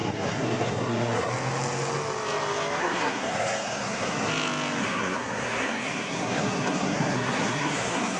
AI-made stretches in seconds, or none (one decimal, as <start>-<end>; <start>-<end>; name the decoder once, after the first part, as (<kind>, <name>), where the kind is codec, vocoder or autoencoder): 0.0-1.3 (codec, SNAC); 2.8-4.3; 4.8-8.2